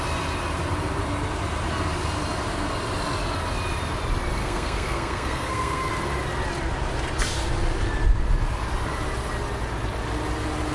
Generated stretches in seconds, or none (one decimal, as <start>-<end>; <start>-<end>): 4.4-5.9